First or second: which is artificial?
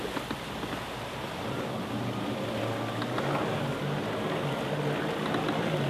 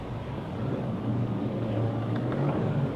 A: second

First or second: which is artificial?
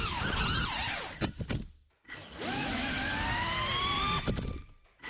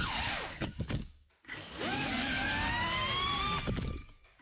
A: second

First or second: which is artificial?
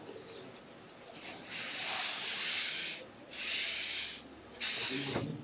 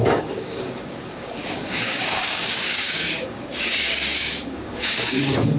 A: second